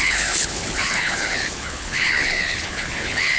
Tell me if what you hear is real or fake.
fake